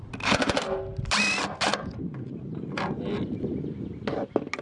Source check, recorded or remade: recorded